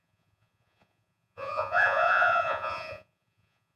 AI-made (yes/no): yes